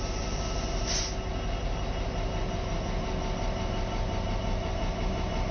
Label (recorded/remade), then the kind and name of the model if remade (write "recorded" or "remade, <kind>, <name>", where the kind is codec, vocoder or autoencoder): recorded